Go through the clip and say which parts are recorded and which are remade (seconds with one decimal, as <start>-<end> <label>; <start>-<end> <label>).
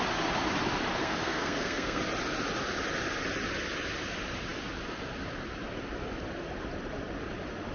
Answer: 0.0-1.0 recorded; 1.0-2.0 remade; 2.0-7.7 recorded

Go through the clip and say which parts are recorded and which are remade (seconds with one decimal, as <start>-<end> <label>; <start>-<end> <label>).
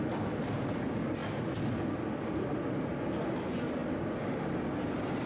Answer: 0.0-5.3 recorded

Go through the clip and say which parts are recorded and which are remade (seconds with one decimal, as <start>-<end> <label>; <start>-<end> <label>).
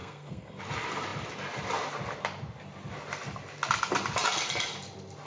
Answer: 0.0-0.6 remade; 0.6-5.3 recorded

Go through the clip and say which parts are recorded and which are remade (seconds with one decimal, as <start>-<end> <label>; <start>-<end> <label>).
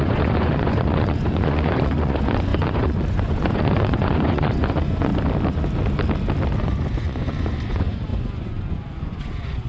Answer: 0.0-5.1 remade; 5.1-6.6 recorded; 6.6-9.7 remade